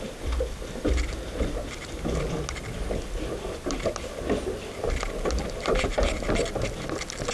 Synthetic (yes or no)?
no